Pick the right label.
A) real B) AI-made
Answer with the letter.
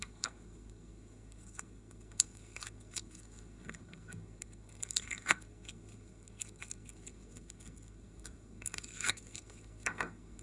B